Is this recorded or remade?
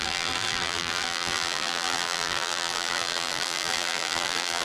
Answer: remade